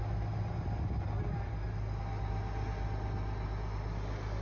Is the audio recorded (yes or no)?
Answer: yes